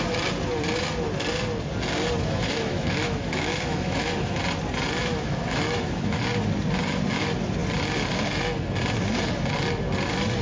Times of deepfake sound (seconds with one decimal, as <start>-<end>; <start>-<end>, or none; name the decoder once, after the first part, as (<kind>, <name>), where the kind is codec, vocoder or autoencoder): 2.2-4.4 (autoencoder, DAC-VAE); 5.0-6.2